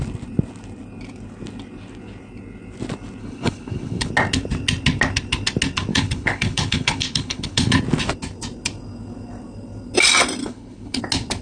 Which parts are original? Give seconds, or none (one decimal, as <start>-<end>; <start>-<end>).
0.0-3.2; 4.1-5.9; 7.8-10.4; 11.0-11.4